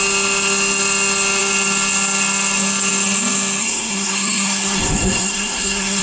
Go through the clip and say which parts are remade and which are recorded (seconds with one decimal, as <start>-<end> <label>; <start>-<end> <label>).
0.0-3.6 recorded; 3.6-6.0 remade